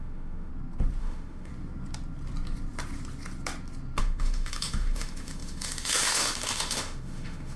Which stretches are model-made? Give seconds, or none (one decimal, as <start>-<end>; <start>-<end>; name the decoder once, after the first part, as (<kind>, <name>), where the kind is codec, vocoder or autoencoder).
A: 0.0-0.5 (autoencoder, DAC-VAE); 1.0-1.5; 4.0-7.6